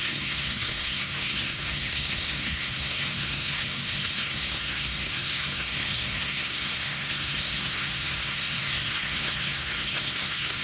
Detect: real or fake fake